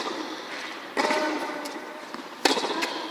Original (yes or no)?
no